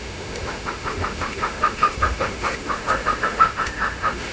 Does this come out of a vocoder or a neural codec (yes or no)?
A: yes